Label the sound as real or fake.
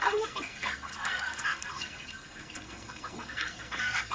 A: fake